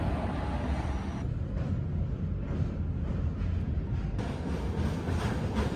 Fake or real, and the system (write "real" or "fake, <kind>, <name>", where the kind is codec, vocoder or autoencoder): real